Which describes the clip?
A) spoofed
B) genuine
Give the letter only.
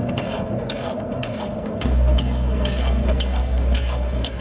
A